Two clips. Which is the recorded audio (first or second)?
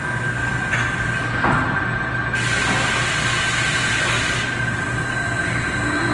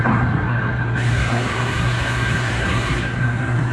first